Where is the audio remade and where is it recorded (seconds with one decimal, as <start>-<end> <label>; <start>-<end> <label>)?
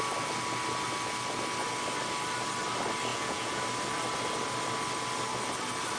0.0-3.1 recorded; 3.1-3.6 remade; 3.6-6.0 recorded